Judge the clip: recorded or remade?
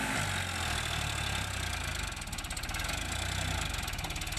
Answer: recorded